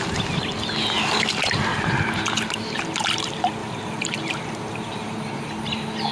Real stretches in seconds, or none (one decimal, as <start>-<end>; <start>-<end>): 0.0-1.7; 2.8-3.6; 5.5-6.1